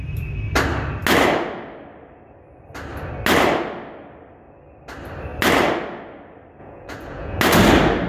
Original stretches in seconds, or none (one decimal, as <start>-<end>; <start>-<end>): 0.0-6.6; 7.4-8.1